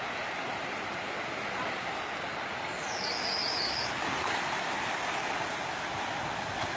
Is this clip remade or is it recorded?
recorded